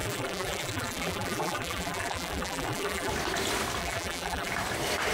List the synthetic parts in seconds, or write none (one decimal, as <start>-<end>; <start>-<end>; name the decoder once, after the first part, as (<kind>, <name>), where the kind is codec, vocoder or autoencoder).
0.0-3.1 (vocoder, BigVGAN v2); 3.8-4.5